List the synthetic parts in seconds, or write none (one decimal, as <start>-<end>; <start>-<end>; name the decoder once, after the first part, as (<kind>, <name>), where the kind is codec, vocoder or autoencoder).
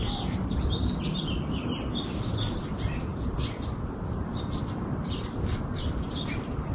3.1-4.1 (vocoder, BigVGAN v2)